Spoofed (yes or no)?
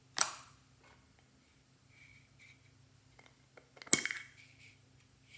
no